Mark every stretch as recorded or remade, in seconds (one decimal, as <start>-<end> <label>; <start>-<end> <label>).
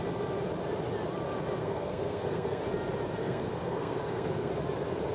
0.0-1.6 recorded; 1.6-2.6 remade; 2.6-3.2 recorded; 3.2-4.5 remade; 4.5-5.1 recorded